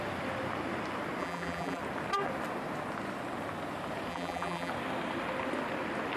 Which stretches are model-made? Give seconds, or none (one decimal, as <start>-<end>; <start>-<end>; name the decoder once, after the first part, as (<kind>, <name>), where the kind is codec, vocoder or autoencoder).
1.2-1.8 (vocoder, BigVGAN v2); 4.1-4.7